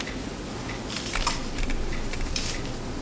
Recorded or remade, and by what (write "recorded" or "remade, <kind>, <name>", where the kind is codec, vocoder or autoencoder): recorded